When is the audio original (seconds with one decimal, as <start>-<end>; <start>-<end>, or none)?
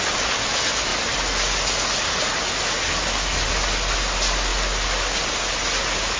0.0-6.2